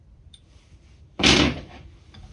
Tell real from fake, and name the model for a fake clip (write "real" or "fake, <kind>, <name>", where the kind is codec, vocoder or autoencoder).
fake, vocoder, BigVGAN v2